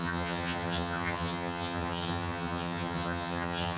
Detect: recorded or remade remade